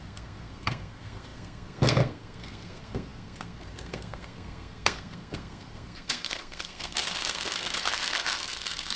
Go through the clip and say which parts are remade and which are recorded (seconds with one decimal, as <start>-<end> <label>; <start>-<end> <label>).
0.0-9.0 remade